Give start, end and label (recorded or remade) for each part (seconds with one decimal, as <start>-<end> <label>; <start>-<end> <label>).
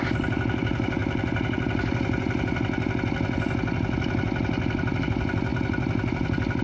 0.0-6.6 recorded